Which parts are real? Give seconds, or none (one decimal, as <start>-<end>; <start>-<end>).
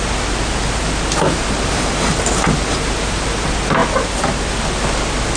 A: 0.0-5.4